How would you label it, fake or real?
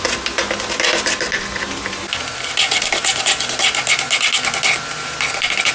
real